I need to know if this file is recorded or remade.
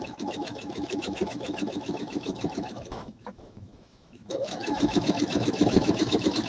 remade